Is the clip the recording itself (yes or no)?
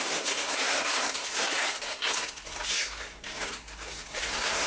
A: no